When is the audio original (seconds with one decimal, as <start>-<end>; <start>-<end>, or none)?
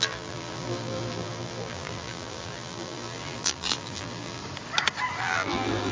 4.4-5.2